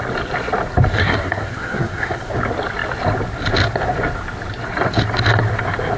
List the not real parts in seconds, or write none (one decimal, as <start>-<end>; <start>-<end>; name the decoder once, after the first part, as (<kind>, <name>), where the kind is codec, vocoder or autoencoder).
1.0-2.3 (codec, SNAC)